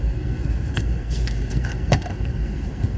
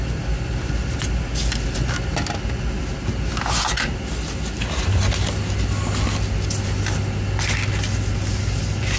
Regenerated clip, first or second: first